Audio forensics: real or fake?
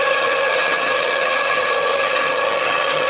fake